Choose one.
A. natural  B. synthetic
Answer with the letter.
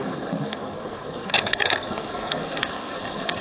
B